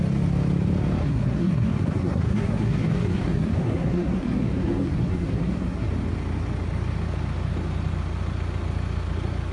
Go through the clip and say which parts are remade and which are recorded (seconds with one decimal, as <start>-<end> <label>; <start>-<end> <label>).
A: 0.0-1.0 recorded; 1.0-5.9 remade; 5.9-9.5 recorded